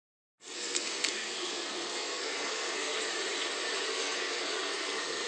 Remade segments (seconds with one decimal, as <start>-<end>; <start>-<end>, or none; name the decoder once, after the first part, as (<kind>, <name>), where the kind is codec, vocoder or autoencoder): 0.0-2.9 (codec, SNAC); 3.9-5.3